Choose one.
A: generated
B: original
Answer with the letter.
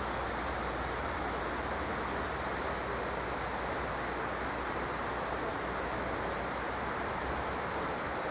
B